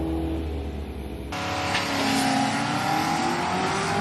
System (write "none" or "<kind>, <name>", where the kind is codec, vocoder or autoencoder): none